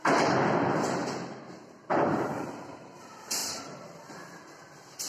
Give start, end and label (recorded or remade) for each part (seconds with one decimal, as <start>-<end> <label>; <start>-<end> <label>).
0.0-3.4 recorded; 3.4-4.2 remade; 4.2-5.1 recorded